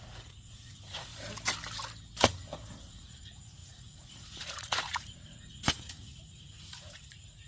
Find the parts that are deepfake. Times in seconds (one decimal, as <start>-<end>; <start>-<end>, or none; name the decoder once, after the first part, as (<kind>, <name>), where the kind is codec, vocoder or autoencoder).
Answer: 0.0-1.1 (vocoder, Vocos); 2.9-7.5